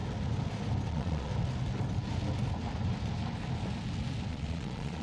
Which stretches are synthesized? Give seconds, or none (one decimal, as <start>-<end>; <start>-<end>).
0.9-1.3; 4.3-5.0